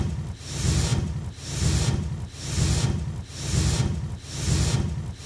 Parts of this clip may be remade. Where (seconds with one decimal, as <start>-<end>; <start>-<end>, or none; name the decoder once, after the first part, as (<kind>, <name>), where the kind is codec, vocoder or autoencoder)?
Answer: none